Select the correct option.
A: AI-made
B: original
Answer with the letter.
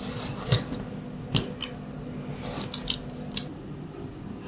B